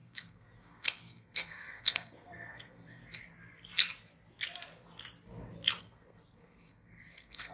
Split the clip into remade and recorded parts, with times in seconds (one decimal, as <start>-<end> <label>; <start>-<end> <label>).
0.0-3.0 remade; 3.0-5.8 recorded; 5.8-7.5 remade